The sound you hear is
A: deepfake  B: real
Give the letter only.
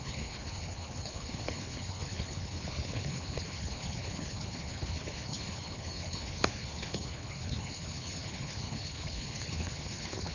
A